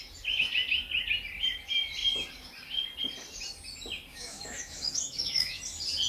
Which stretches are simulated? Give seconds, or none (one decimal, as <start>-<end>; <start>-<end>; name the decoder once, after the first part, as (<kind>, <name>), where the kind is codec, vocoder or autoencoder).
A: 4.1-5.6 (autoencoder, DAC-VAE)